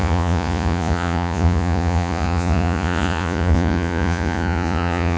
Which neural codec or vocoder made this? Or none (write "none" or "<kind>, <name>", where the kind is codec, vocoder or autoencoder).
vocoder, Vocos